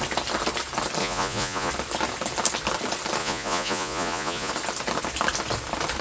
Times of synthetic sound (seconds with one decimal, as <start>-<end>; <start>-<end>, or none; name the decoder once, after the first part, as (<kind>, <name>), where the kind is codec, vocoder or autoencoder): 1.0-1.7 (vocoder, Vocos); 3.2-4.5